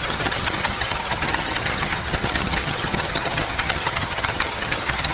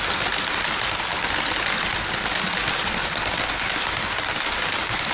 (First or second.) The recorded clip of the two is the second